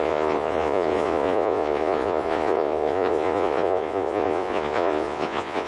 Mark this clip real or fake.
fake